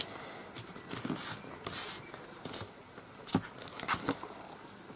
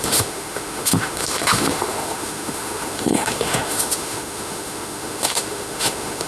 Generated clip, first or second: second